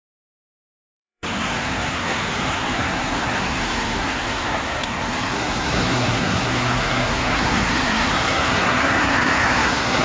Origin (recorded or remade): remade